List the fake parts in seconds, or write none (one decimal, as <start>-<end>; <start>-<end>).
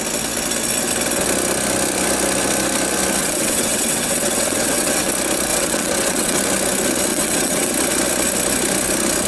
3.2-5.1; 5.5-6.4; 7.1-7.7